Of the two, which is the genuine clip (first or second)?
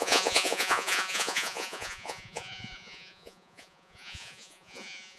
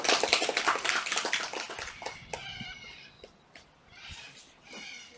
second